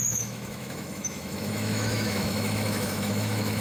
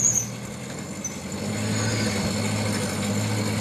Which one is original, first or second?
second